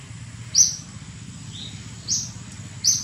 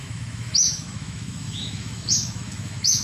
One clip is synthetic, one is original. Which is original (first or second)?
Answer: first